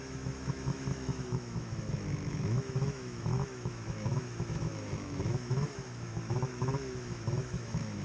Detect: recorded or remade remade